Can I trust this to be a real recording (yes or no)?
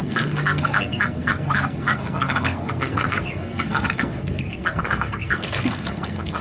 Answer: no